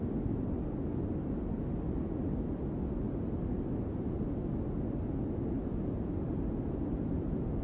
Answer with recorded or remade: recorded